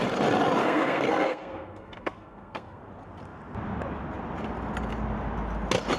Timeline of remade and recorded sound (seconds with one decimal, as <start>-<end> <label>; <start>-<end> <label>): 0.0-0.6 recorded; 0.6-2.8 remade; 2.8-6.0 recorded